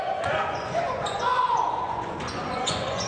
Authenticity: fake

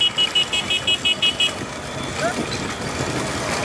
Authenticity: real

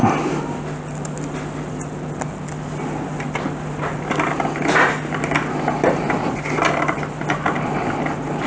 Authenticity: real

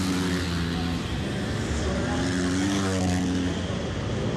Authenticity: real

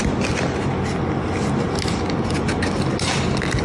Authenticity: real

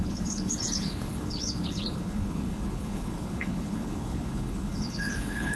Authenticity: fake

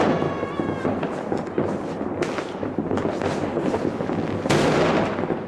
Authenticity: real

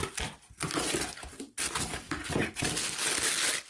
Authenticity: real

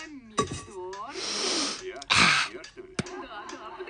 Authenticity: real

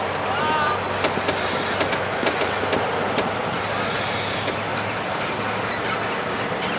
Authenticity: real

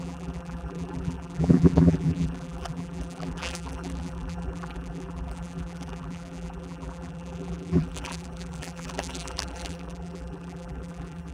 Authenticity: fake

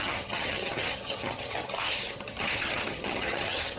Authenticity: fake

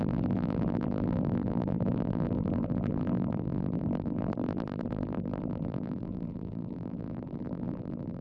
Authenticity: fake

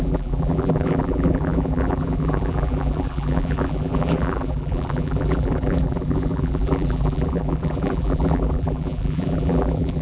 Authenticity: fake